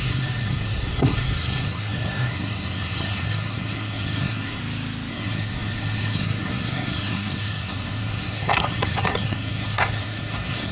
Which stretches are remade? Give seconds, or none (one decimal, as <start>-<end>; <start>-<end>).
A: 0.0-4.6; 5.1-10.7